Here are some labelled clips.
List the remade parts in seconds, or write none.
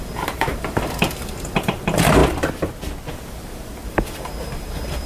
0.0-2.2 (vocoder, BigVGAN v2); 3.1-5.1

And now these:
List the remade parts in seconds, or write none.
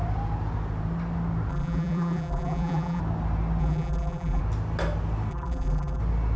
1.5-3.0 (vocoder, BigVGAN v2); 3.6-4.4; 5.3-6.0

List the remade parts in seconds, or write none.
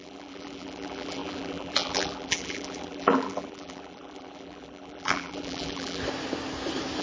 0.0-6.0 (vocoder, BigVGAN v2)